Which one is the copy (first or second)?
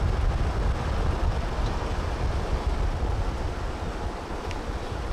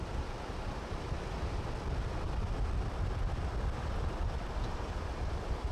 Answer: second